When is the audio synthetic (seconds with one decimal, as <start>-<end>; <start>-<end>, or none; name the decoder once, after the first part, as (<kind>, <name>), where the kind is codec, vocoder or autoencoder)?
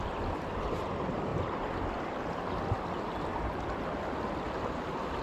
none